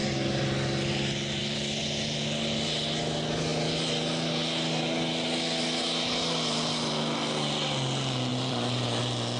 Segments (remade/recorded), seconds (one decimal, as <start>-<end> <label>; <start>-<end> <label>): 0.0-8.3 recorded; 8.3-9.0 remade; 9.0-9.4 recorded